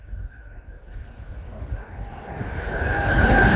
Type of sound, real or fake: fake